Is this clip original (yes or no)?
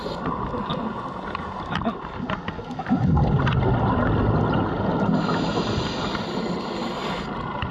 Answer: yes